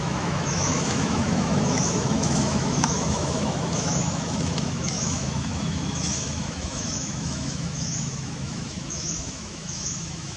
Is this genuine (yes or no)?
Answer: no